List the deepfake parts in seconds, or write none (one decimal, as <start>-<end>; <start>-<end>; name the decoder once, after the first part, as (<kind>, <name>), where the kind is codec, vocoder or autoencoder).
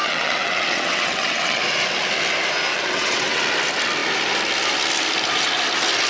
0.0-1.6 (vocoder, WaveNeXt); 2.7-3.4